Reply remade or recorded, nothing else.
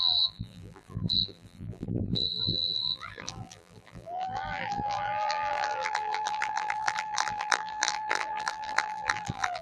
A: remade